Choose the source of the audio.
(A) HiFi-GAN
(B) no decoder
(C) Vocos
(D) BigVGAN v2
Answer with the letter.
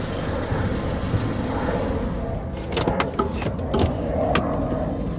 B